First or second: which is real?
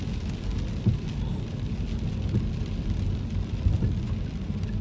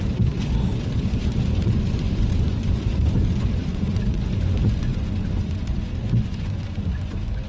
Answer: first